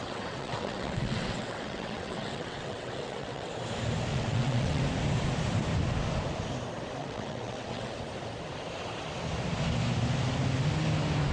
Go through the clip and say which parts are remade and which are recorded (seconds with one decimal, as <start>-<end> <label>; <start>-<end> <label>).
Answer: 0.0-3.5 remade; 3.5-4.1 recorded; 4.1-4.8 remade; 4.8-7.0 recorded; 7.0-7.9 remade; 7.9-11.3 recorded